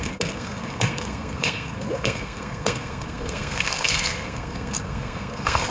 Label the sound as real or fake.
fake